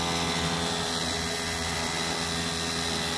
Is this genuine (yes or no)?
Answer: yes